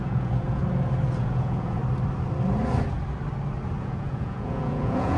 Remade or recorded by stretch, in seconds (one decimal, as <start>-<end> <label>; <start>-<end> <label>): 0.0-0.6 remade; 0.6-1.2 recorded; 1.2-1.8 remade; 1.8-3.8 recorded; 3.8-5.2 remade

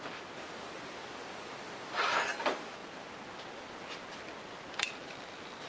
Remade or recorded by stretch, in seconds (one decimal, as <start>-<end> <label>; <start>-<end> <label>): 0.0-5.7 recorded

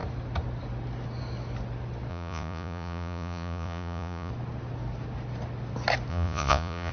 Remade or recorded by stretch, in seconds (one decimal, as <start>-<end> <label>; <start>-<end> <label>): 0.0-2.1 recorded; 2.1-4.3 remade; 4.3-6.1 recorded; 6.1-6.9 remade

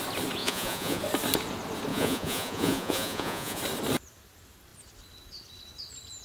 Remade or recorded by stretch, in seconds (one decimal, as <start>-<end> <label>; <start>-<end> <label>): 0.0-0.4 recorded; 0.4-1.0 remade; 1.0-1.9 recorded; 1.9-3.6 remade; 3.6-6.2 recorded

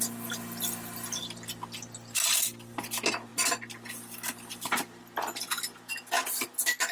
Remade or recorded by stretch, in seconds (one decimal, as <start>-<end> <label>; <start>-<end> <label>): 0.0-6.9 recorded